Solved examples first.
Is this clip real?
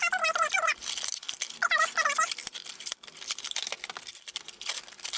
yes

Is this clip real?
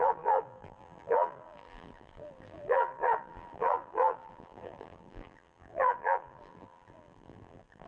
no